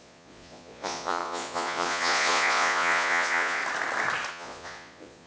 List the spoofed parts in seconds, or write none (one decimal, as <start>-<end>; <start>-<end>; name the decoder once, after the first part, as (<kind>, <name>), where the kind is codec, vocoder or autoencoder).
0.0-3.6 (vocoder, Vocos); 4.3-5.3